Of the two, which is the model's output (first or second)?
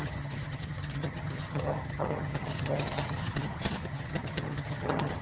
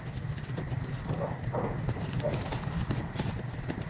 first